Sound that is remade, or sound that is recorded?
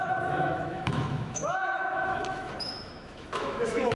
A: remade